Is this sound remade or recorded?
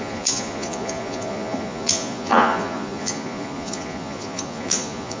remade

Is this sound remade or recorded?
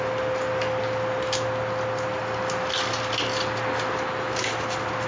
recorded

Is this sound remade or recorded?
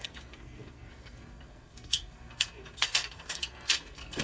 remade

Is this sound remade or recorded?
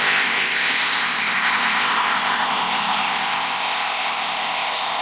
remade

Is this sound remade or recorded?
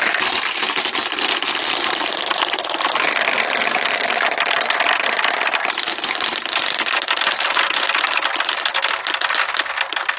recorded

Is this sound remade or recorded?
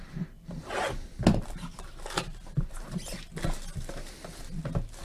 recorded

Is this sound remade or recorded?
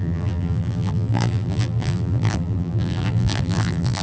remade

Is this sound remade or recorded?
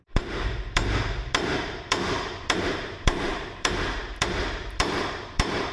remade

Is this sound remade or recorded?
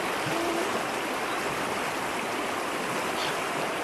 recorded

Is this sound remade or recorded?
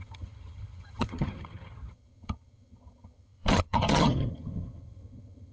remade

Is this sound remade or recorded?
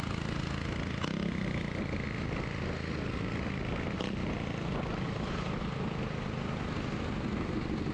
recorded